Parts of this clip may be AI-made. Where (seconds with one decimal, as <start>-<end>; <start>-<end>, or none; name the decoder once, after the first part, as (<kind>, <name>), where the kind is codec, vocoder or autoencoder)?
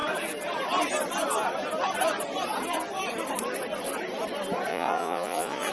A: 4.7-5.7 (vocoder, Vocos)